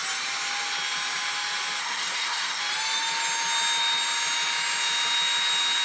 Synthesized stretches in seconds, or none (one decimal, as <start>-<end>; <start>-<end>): 1.8-2.6